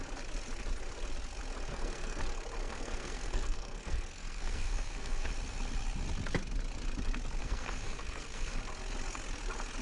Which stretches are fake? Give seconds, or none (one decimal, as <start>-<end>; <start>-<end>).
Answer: 1.7-2.2; 2.6-5.3; 7.4-8.6